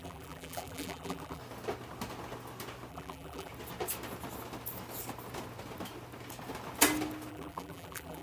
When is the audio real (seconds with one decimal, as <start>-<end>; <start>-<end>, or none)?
1.4-2.9; 3.5-7.3